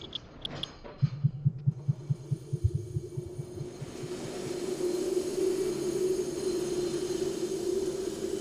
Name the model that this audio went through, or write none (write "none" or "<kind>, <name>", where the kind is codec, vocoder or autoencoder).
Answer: none